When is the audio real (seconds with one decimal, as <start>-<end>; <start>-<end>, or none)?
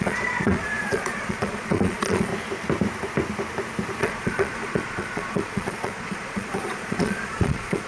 2.3-4.0